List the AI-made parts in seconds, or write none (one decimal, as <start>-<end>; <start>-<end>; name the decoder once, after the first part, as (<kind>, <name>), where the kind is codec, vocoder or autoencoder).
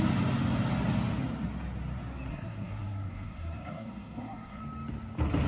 2.3-4.6 (codec, SNAC)